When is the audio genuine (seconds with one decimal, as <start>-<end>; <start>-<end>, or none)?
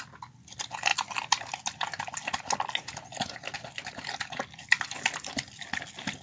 0.0-6.2